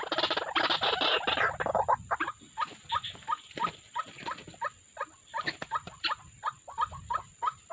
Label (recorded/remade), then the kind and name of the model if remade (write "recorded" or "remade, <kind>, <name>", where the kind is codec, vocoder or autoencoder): recorded